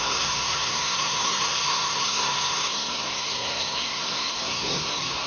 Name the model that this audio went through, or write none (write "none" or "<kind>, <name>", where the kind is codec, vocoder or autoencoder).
codec, SNAC